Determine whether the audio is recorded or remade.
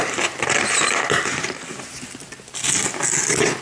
recorded